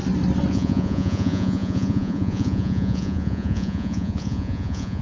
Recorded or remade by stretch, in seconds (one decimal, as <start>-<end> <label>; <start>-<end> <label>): 0.0-0.5 recorded; 0.5-5.0 remade